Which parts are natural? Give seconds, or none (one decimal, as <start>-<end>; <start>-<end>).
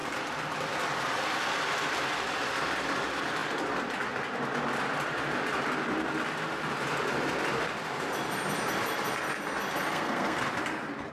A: 0.0-9.9; 10.4-11.1